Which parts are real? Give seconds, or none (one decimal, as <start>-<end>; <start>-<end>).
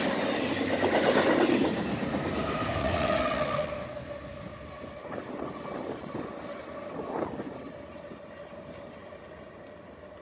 0.0-2.8; 3.7-10.2